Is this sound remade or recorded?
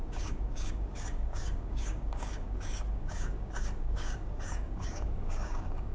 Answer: remade